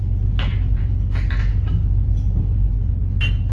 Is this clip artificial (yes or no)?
no